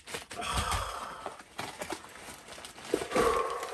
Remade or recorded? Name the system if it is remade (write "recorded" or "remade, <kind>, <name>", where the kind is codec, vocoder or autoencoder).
recorded